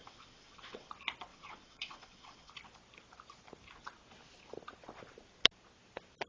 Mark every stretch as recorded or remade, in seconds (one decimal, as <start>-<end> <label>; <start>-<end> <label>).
0.0-0.9 remade; 0.9-1.3 recorded; 1.3-2.5 remade; 2.5-6.3 recorded